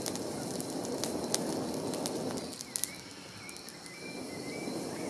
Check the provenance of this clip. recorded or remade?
recorded